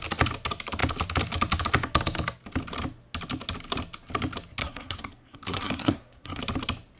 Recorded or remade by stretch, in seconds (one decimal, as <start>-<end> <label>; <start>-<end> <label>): 0.0-4.6 recorded; 4.6-6.4 remade; 6.4-7.0 recorded